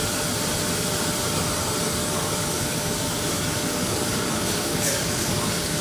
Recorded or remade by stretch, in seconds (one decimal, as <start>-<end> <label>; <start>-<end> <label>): 0.0-2.0 recorded; 2.0-5.8 remade